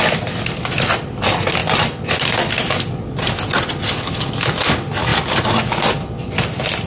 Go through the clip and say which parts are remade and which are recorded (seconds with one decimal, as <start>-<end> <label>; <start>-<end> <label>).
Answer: 0.0-6.9 recorded